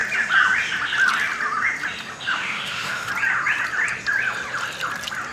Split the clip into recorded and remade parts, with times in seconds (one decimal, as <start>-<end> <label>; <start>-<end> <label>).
0.0-2.3 recorded; 2.3-3.1 remade; 3.1-5.3 recorded